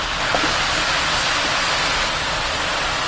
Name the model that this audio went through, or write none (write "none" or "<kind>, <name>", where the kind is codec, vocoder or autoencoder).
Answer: none